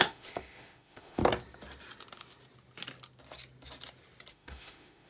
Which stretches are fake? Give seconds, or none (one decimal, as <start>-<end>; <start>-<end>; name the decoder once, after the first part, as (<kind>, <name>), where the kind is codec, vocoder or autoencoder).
0.0-1.2 (autoencoder, DAC-VAE); 4.3-5.1